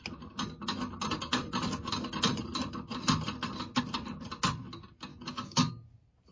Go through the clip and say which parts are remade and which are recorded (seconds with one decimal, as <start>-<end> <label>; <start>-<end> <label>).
0.0-5.1 recorded; 5.1-5.7 remade; 5.7-6.3 recorded